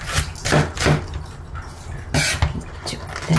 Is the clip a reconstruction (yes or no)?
no